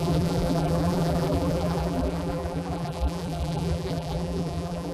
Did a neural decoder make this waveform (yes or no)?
yes